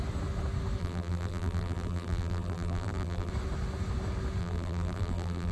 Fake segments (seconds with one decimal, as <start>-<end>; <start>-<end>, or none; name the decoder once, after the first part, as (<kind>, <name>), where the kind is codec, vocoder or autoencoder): 0.8-3.3 (vocoder, BigVGAN v2); 4.4-5.5